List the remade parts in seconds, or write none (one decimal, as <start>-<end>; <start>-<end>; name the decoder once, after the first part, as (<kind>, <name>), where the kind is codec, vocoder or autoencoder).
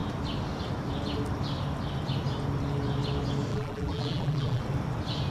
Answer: 3.5-4.6 (vocoder, BigVGAN v2)